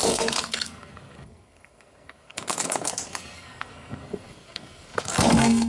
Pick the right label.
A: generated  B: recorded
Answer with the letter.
A